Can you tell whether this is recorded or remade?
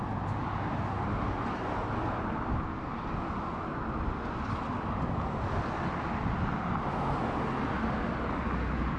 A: recorded